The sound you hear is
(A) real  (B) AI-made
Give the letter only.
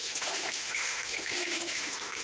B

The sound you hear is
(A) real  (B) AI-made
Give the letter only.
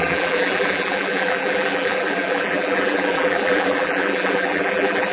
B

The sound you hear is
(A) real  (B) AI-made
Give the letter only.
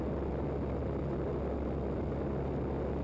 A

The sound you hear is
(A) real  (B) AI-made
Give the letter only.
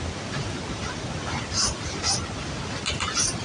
A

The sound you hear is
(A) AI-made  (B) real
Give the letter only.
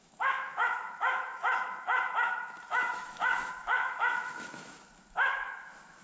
A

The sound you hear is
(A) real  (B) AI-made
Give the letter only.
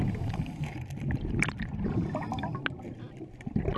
A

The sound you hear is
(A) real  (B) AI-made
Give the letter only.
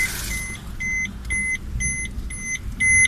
A